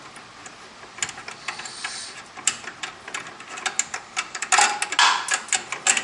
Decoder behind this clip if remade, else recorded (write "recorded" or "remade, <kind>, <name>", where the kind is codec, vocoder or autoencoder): recorded